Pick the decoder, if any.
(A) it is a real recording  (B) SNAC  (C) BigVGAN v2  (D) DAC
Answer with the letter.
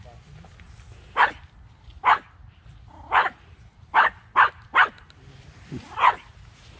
A